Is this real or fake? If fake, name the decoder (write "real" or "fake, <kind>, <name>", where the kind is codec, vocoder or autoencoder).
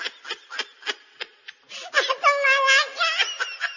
real